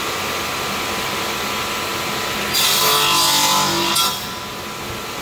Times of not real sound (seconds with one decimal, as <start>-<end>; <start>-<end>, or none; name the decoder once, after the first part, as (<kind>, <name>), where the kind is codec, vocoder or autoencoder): none